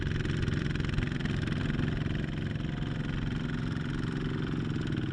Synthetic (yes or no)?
no